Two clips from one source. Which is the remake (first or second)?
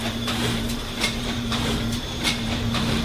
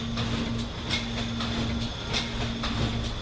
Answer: first